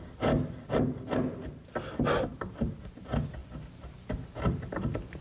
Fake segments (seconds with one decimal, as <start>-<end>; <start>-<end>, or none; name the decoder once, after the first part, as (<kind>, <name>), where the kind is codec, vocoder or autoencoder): 2.3-2.8 (vocoder, BigVGAN v2); 3.4-4.8